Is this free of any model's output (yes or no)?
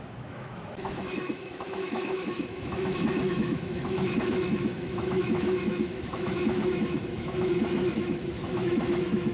no